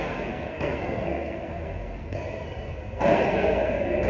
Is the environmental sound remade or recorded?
remade